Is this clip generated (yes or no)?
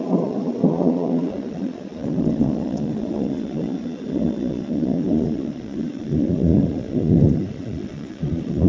yes